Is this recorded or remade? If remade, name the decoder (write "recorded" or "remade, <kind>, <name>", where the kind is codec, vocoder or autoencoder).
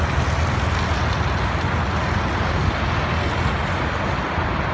recorded